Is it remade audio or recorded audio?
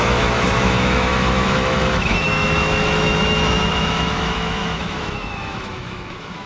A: remade